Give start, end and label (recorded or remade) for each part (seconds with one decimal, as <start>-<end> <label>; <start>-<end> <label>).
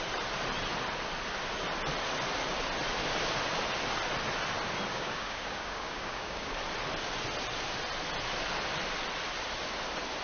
0.0-4.9 recorded; 4.9-6.5 remade; 6.5-10.2 recorded